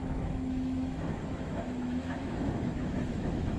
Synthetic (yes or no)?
yes